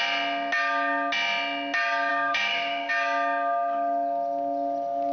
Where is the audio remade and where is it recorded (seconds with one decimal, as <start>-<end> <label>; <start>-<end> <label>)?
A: 0.0-2.1 recorded; 2.1-2.9 remade; 2.9-5.1 recorded